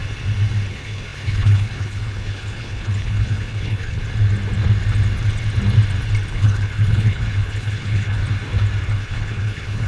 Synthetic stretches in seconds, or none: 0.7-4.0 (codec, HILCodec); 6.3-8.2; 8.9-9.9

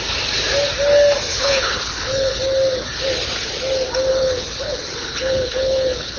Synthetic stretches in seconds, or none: 1.3-2.4 (codec, HILCodec); 4.1-6.2